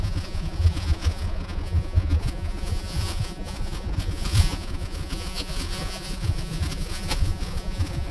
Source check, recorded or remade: remade